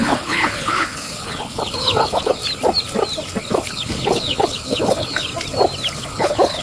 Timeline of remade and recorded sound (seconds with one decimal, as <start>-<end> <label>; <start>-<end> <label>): 0.0-2.4 remade; 2.4-3.4 recorded; 3.4-5.3 remade; 5.3-5.9 recorded; 5.9-6.6 remade